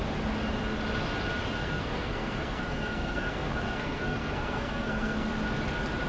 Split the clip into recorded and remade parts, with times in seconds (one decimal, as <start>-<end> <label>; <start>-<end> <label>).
0.0-1.6 recorded; 1.6-5.3 remade; 5.3-6.1 recorded